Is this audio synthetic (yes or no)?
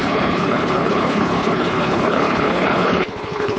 yes